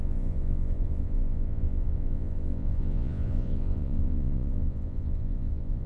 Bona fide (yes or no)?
no